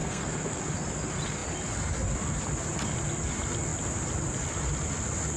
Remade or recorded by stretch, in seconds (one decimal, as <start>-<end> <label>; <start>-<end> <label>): 0.0-0.6 remade; 0.6-5.4 recorded